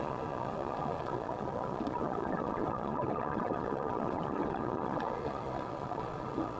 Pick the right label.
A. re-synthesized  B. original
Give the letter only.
A